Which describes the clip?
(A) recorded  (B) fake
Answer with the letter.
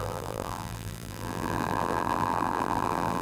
B